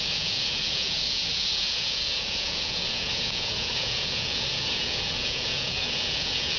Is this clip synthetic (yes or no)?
yes